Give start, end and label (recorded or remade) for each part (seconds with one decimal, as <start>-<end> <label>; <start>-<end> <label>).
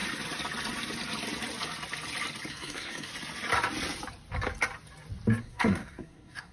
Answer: 0.0-2.5 recorded; 2.5-3.1 remade; 3.1-5.4 recorded; 5.4-6.5 remade